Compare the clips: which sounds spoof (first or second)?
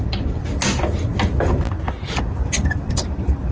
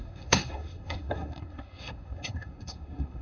second